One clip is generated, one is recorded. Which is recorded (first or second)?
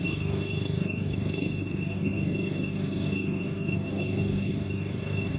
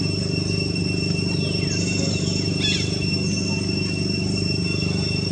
second